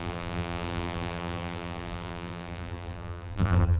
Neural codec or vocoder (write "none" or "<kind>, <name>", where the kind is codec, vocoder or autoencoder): vocoder, BigVGAN v2